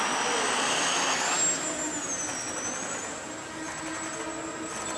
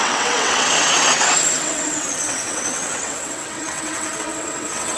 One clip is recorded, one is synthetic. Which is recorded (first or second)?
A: first